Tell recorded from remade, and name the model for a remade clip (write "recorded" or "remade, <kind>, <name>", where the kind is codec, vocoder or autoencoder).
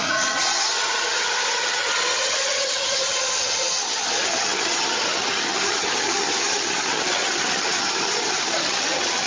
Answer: remade, vocoder, HiFi-GAN